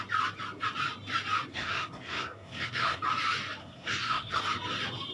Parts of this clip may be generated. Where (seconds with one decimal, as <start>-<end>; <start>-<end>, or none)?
1.5-3.0; 3.6-4.4

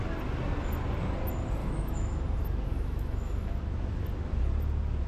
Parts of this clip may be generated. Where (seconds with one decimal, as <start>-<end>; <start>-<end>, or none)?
1.6-2.2; 2.7-3.3

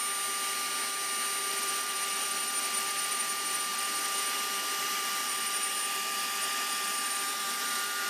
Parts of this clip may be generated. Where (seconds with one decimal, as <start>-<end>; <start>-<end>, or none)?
1.5-8.1

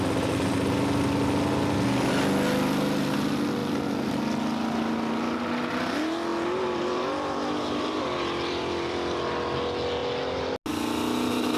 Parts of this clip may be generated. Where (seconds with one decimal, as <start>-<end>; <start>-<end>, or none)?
3.6-4.1; 6.3-9.2

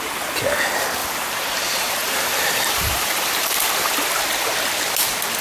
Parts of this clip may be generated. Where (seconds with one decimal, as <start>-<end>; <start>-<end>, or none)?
1.0-4.2

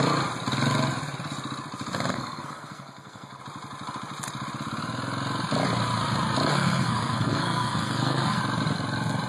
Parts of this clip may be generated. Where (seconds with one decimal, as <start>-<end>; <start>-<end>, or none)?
2.1-3.4; 6.5-8.4

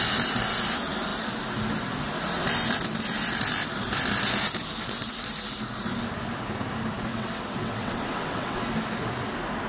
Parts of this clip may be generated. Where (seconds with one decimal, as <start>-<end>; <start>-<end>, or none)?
7.1-8.6

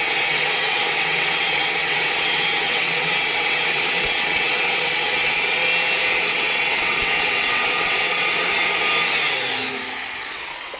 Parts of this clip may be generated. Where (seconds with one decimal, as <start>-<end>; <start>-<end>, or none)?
0.0-5.6; 6.3-8.5; 10.3-10.8